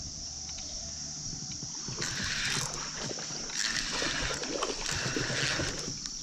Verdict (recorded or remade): recorded